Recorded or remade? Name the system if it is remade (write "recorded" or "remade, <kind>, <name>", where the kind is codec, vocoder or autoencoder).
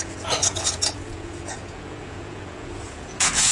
remade, vocoder, Vocos